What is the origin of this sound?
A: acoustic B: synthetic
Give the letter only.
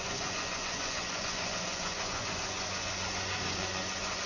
B